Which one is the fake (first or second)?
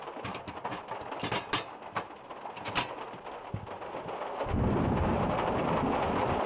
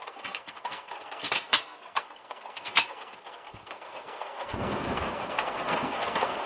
second